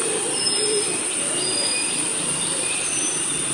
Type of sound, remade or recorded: remade